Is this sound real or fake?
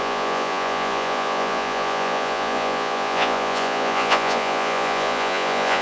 fake